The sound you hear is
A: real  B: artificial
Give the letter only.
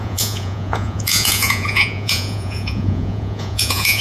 B